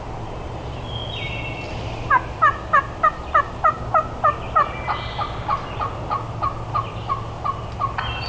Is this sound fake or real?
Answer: real